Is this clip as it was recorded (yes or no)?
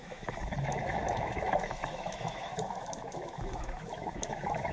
no